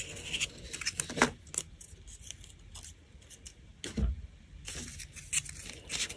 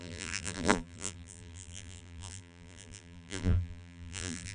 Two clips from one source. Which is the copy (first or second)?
second